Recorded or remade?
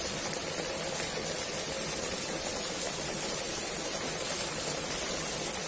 recorded